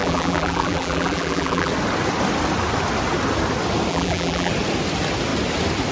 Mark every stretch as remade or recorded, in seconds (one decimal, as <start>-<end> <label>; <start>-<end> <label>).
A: 0.0-1.7 remade; 1.7-3.9 recorded; 3.9-4.5 remade; 4.5-5.9 recorded